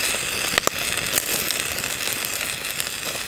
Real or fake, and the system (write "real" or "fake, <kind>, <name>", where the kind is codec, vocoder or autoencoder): real